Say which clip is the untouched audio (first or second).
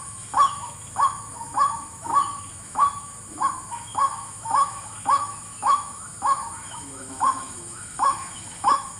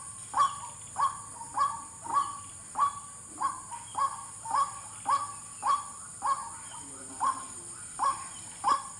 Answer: second